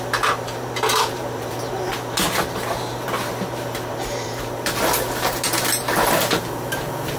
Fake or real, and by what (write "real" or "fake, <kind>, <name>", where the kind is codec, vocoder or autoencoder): fake, vocoder, BigVGAN v2